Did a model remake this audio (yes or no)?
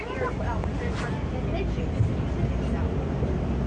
no